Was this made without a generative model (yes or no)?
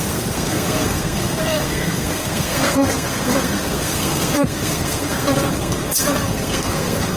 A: no